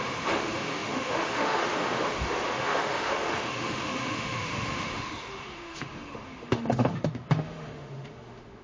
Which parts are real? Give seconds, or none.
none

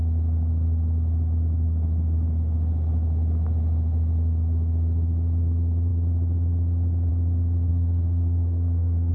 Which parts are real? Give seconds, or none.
0.0-7.7

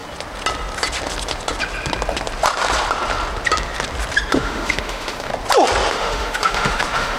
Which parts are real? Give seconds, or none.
0.0-4.3; 5.3-5.9

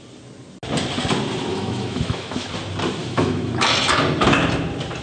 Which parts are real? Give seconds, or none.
0.0-1.5; 2.5-3.0; 3.5-5.0

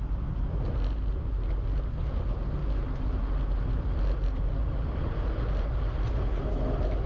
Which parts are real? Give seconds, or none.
0.0-7.1

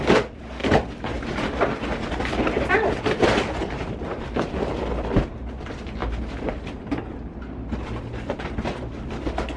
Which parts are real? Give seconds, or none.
0.0-3.6; 4.7-6.0; 7.4-9.6

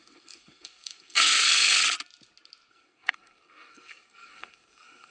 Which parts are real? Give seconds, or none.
1.8-2.7

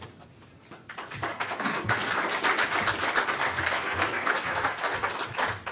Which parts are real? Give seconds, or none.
0.0-1.3; 2.1-3.4; 5.1-5.7